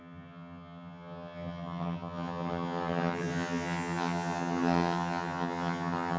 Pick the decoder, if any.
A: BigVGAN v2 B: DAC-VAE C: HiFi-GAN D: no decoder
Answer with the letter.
C